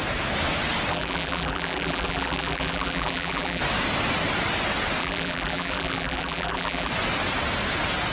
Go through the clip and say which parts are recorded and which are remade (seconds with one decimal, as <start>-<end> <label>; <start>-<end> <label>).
0.0-0.9 recorded; 0.9-3.6 remade; 3.6-5.0 recorded; 5.0-6.9 remade; 6.9-8.1 recorded